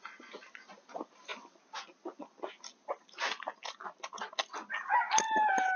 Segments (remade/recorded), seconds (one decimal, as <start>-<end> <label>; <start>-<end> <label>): 0.0-5.8 recorded